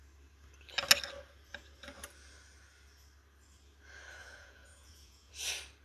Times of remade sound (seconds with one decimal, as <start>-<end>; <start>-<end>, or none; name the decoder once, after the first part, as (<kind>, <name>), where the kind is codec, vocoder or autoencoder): 4.2-5.3 (vocoder, Vocos)